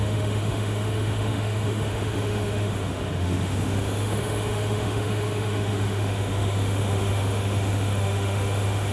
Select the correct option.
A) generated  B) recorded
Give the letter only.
A